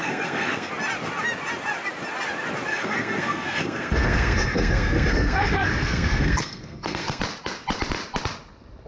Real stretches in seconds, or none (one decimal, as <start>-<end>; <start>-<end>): 0.7-2.7; 7.2-8.9